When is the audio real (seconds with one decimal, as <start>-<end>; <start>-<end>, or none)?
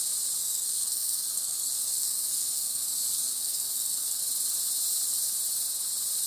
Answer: 0.0-0.4; 4.2-6.3